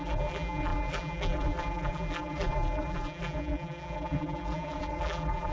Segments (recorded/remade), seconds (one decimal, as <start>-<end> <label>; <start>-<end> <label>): 0.0-5.5 remade